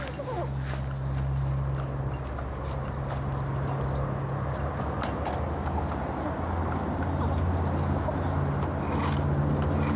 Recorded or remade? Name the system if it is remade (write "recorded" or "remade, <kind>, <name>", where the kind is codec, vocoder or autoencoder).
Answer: recorded